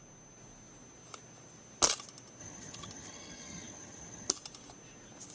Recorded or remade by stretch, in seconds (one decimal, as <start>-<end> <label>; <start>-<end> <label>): 0.0-2.4 recorded; 2.4-4.3 remade; 4.3-5.3 recorded